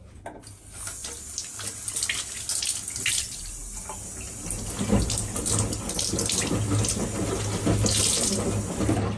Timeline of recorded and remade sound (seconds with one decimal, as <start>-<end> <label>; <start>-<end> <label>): 0.0-9.2 recorded